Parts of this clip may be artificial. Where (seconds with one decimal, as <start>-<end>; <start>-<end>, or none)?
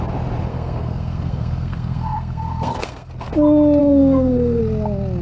0.5-3.1; 3.8-4.6